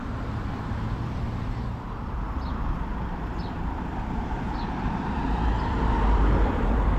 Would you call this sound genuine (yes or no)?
no